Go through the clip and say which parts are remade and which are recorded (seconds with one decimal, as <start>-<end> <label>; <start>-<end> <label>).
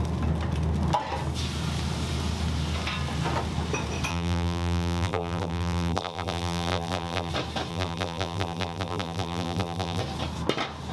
0.0-4.1 recorded; 4.1-7.3 remade; 7.3-7.7 recorded; 7.7-10.0 remade; 10.0-10.9 recorded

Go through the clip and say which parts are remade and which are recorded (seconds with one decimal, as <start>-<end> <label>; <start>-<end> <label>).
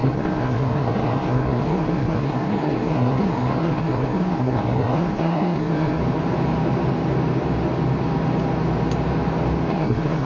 0.0-6.0 remade; 6.0-9.7 recorded; 9.7-10.2 remade